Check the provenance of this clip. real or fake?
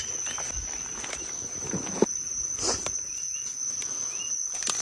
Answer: real